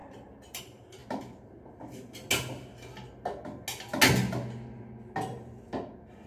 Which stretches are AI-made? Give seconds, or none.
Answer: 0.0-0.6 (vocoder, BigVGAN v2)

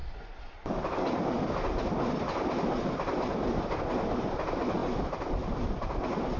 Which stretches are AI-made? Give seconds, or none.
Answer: 4.8-5.8 (vocoder, BigVGAN v2)

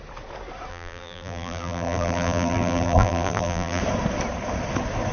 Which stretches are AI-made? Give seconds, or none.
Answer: 0.7-3.8 (vocoder, BigVGAN v2)

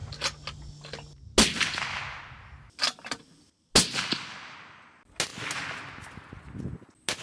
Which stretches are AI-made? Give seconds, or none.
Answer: none

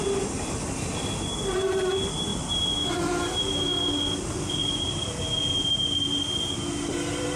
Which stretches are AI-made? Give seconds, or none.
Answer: 2.3-3.0 (vocoder, BigVGAN v2); 4.6-5.4

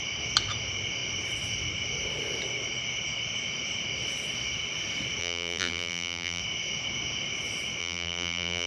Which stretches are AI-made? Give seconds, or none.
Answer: 5.2-6.4 (vocoder, BigVGAN v2); 7.8-8.7